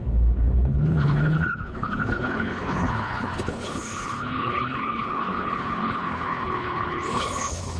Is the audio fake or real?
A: fake